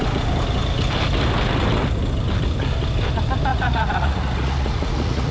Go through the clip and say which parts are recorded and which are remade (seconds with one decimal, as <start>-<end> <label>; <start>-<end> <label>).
0.0-3.5 recorded; 3.5-5.3 remade